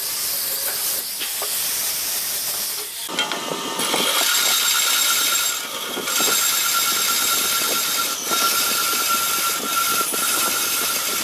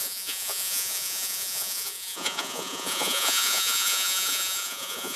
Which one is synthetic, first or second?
second